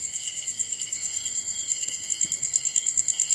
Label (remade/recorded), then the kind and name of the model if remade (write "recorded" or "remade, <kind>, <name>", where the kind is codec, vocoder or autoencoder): remade, codec, SNAC